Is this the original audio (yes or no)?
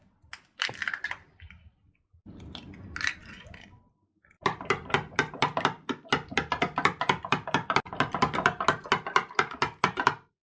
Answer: yes